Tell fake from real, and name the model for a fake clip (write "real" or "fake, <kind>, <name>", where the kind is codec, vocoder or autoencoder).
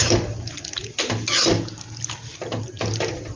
real